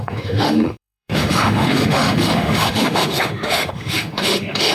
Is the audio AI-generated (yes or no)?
yes